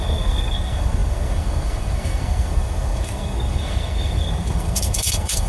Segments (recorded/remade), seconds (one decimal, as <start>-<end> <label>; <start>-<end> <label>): 0.0-5.5 remade